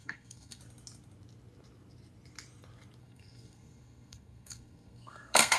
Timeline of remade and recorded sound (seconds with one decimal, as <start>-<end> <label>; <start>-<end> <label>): 0.0-0.6 remade; 0.6-3.0 recorded; 3.0-5.6 remade